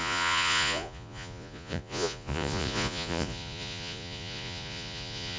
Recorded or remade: remade